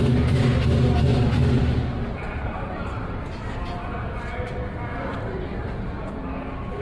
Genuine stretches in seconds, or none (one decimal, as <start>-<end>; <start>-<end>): 0.0-1.1; 3.2-6.8